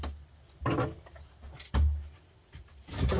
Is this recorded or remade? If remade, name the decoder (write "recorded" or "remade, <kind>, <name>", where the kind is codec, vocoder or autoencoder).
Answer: recorded